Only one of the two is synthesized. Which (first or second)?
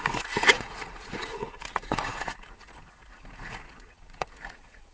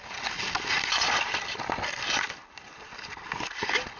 first